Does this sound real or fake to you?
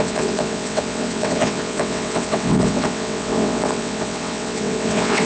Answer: fake